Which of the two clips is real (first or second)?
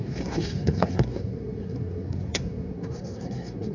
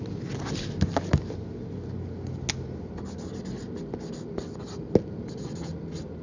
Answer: second